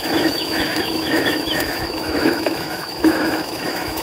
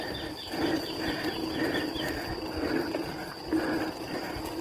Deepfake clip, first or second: first